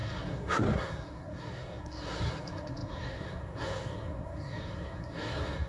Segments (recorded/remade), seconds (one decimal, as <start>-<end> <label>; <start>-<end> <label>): 0.0-5.7 remade